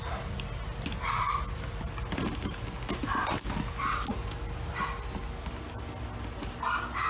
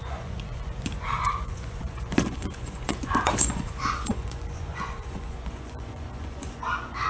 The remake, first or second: second